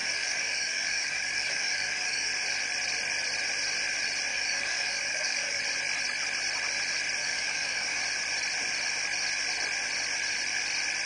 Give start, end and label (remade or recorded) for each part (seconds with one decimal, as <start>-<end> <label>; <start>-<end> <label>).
0.0-2.3 remade; 2.3-4.3 recorded; 4.3-5.6 remade; 5.6-7.2 recorded; 7.2-8.0 remade; 8.0-11.1 recorded